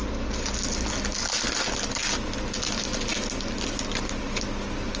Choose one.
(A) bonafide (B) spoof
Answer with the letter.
A